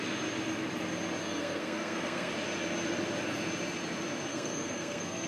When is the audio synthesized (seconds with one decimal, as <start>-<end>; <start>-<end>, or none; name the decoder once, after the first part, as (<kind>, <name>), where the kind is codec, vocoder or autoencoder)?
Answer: 1.2-2.3 (codec, SNAC); 4.3-5.3